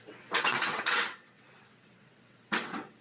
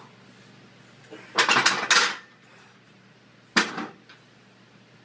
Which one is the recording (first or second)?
second